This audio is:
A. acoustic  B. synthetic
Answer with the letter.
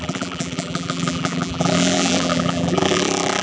B